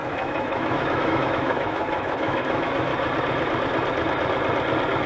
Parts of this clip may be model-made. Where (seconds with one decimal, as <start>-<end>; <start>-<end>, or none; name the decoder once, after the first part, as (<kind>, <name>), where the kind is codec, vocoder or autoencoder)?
0.0-2.9 (autoencoder, DAC-VAE)